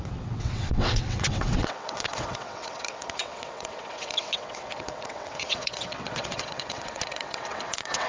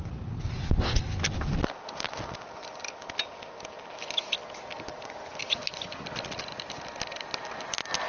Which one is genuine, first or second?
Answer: second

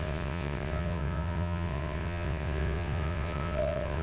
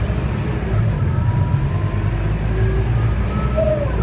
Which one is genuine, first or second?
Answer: second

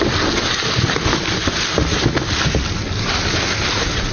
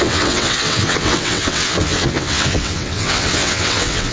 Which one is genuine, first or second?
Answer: first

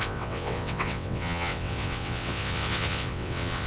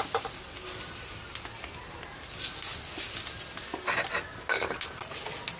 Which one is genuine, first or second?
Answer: second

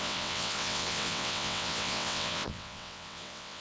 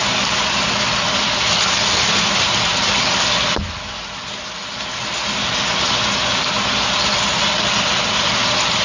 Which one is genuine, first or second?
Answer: second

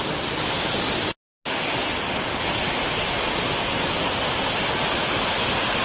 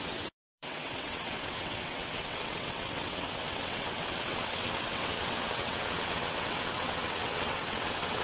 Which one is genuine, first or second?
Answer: first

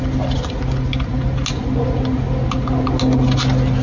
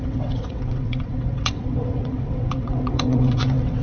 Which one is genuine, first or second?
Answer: first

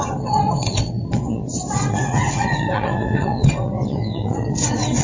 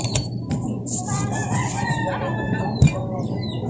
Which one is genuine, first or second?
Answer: second